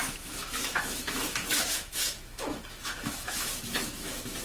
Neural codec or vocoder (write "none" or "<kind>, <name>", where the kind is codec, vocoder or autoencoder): autoencoder, DAC-VAE